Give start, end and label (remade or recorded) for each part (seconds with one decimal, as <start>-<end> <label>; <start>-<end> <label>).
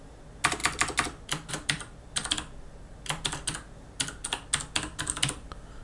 0.0-5.8 recorded